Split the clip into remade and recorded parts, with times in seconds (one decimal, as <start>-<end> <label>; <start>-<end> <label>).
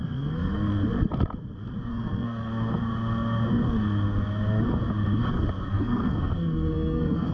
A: 0.0-0.8 remade; 0.8-1.9 recorded; 1.9-2.5 remade; 2.5-5.7 recorded; 5.7-7.3 remade